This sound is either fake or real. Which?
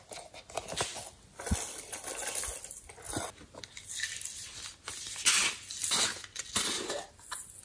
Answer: real